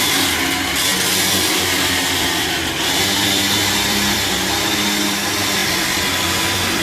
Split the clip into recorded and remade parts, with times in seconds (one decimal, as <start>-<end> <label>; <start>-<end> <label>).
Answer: 0.0-6.8 remade

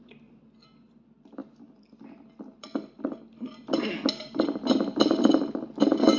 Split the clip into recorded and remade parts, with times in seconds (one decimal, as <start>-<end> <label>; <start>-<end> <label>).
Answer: 0.0-1.4 recorded; 1.4-3.0 remade; 3.0-4.6 recorded; 4.6-5.4 remade; 5.4-6.2 recorded